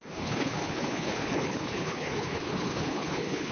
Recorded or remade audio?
remade